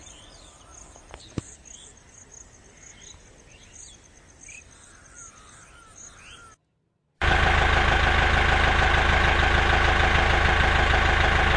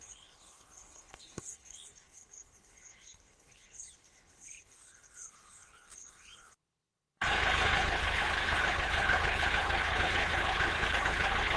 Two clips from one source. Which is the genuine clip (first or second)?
first